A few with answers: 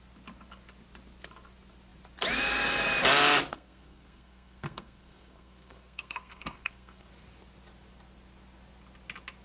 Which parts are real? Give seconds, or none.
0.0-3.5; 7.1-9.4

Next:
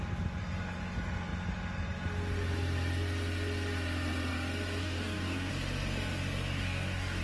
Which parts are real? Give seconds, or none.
0.0-4.8; 5.5-6.5

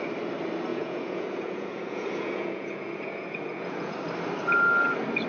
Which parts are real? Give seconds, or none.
0.0-0.7; 3.9-5.3

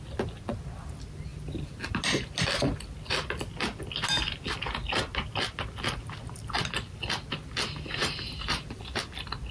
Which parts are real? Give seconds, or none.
0.0-8.0; 9.0-9.5

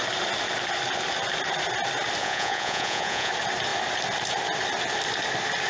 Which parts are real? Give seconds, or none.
0.0-2.2; 3.3-5.7

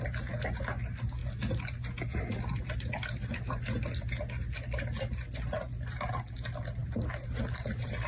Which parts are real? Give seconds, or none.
0.0-8.1